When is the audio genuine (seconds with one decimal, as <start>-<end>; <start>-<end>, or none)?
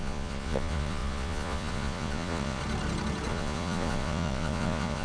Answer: 2.6-3.3